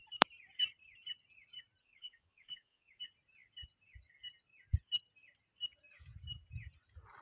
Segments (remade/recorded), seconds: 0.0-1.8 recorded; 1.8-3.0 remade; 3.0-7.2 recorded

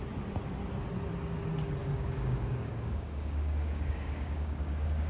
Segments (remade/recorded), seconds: 0.0-1.8 recorded; 1.8-5.1 remade

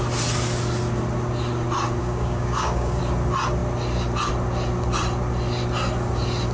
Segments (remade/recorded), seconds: 0.0-2.0 recorded; 2.0-3.0 remade; 3.0-6.5 recorded

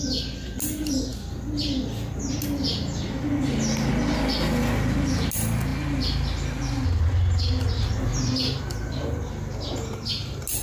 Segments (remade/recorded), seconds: 0.0-10.6 recorded

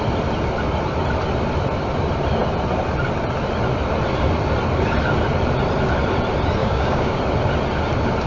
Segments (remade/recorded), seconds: 0.0-6.6 recorded; 6.6-7.2 remade; 7.2-8.3 recorded